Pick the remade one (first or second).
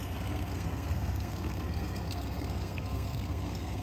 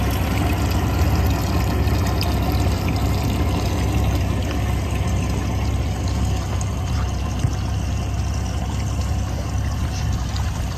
first